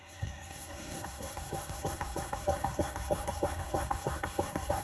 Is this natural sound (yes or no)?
no